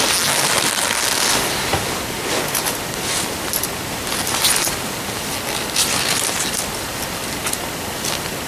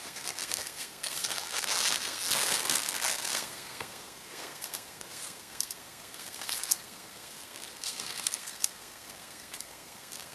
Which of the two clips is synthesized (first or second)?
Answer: second